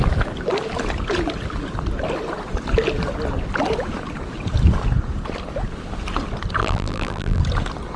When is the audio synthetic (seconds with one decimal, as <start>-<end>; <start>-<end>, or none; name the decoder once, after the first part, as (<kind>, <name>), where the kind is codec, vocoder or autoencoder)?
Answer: 6.6-7.4 (vocoder, BigVGAN v2)